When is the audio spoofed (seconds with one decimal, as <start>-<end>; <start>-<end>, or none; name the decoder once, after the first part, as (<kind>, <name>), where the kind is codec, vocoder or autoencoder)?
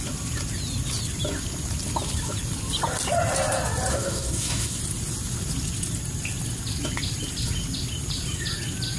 3.9-4.8 (codec, SNAC)